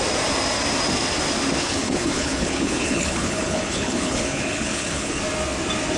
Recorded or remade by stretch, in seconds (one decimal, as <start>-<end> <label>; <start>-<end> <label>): 0.0-1.6 recorded; 1.6-5.2 remade; 5.2-6.0 recorded